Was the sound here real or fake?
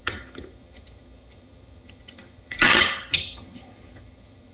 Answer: fake